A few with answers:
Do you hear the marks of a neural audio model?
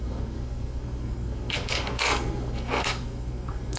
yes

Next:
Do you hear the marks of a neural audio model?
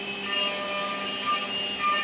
no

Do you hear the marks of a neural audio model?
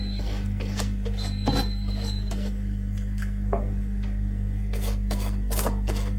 yes